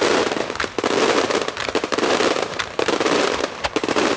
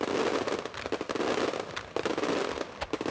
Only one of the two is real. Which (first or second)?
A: second